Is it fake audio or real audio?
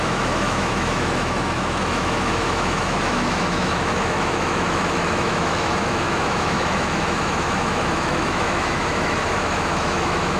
fake